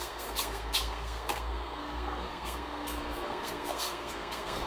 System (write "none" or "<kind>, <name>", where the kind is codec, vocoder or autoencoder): codec, SNAC